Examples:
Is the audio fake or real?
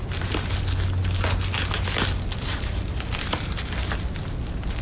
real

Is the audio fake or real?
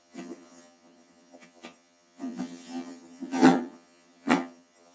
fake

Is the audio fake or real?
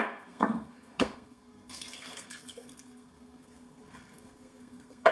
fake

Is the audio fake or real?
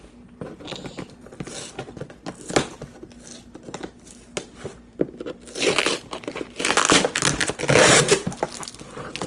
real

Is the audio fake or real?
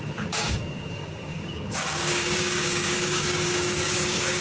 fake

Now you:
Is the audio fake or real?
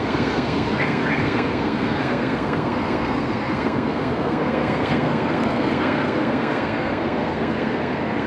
fake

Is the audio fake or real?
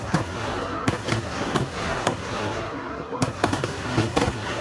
fake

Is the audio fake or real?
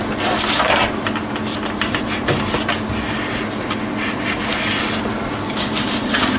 real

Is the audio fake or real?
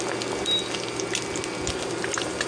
real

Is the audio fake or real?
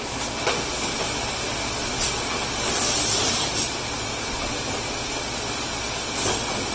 real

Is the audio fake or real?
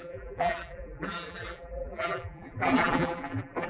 fake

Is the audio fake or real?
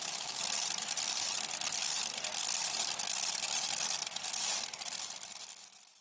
real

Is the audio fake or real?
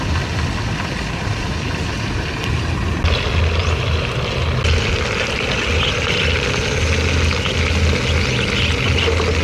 real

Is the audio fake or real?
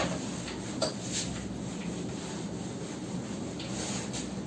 real